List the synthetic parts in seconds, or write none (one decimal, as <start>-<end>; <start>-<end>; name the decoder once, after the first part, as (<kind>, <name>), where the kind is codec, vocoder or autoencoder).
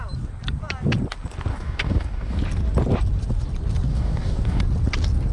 1.5-2.4 (codec, DAC); 3.9-4.6